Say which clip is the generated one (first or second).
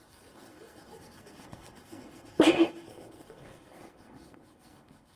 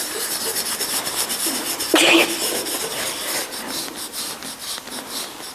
first